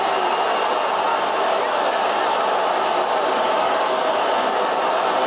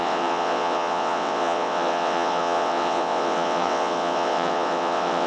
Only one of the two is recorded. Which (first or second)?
first